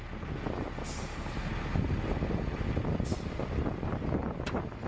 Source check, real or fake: real